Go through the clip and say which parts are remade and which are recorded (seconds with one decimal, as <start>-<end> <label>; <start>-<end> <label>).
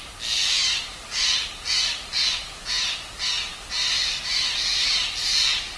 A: 0.0-5.8 recorded